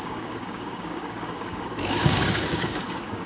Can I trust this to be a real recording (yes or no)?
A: no